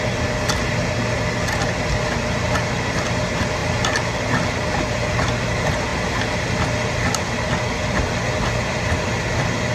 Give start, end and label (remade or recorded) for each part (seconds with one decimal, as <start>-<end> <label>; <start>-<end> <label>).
0.0-9.7 recorded